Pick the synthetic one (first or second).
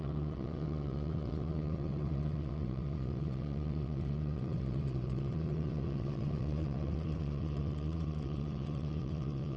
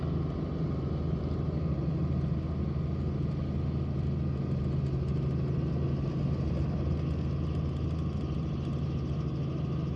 first